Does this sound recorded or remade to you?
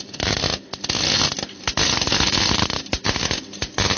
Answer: recorded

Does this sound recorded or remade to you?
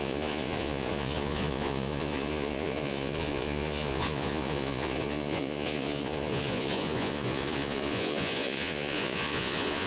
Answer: remade